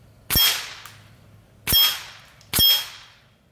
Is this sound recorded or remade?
recorded